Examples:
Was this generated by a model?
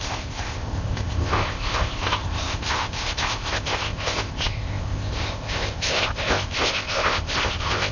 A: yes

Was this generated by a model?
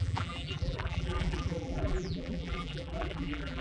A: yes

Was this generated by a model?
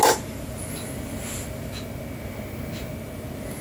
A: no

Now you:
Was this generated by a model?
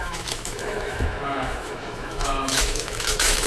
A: yes